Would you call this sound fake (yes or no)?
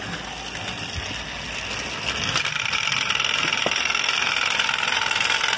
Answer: no